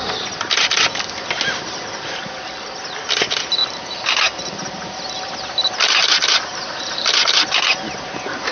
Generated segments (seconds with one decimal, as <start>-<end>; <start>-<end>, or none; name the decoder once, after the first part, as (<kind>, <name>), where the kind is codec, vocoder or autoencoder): none